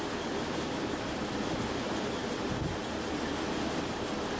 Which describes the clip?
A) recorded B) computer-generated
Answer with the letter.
B